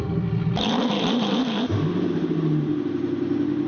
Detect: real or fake real